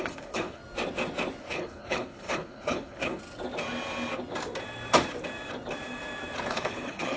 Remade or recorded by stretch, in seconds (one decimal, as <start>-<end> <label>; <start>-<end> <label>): 0.0-0.6 remade; 0.6-1.4 recorded; 1.4-3.2 remade; 3.2-6.5 recorded; 6.5-7.2 remade